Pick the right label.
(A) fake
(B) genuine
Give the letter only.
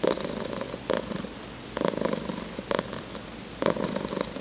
B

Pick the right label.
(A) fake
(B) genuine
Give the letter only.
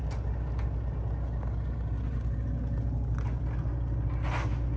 B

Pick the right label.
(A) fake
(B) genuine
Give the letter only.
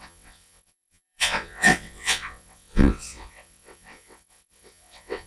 A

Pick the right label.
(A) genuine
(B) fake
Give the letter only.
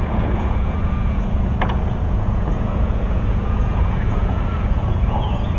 B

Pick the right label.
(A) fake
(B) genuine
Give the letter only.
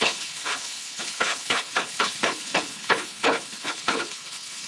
A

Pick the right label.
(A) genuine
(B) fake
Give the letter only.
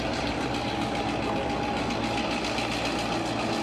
A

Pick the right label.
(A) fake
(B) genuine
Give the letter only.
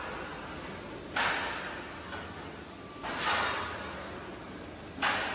B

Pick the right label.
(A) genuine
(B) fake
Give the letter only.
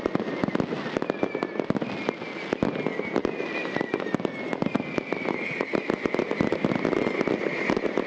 A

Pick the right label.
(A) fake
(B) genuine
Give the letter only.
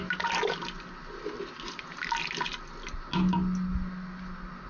B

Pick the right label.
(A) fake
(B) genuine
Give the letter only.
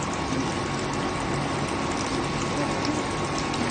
B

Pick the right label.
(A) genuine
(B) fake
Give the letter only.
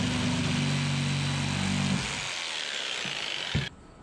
A